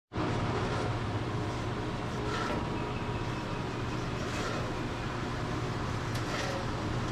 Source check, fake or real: real